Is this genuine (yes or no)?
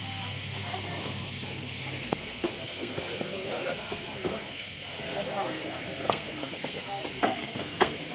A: no